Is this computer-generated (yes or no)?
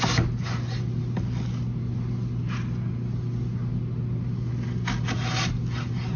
no